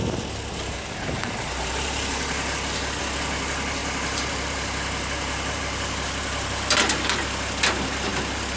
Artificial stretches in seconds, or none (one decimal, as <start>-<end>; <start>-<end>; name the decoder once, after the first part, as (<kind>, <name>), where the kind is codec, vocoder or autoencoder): 0.0-3.0 (vocoder, BigVGAN v2); 3.8-5.6; 8.1-8.6